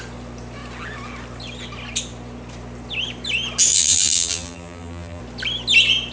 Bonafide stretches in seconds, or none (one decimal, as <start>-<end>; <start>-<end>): 0.0-3.7; 5.2-6.1